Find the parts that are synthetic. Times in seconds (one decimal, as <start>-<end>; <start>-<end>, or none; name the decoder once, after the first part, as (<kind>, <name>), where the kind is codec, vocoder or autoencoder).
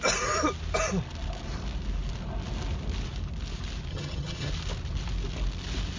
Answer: 3.9-4.5 (vocoder, HiFi-GAN)